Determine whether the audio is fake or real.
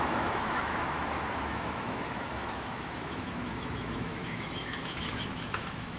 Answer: fake